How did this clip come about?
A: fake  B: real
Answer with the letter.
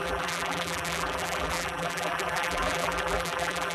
A